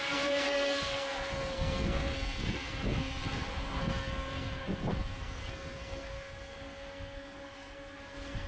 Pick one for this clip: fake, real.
fake